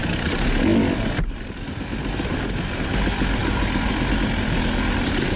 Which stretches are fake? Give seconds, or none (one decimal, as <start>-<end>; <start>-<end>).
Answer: 0.7-2.3